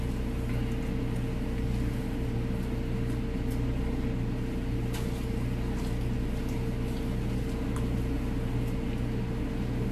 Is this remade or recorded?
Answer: recorded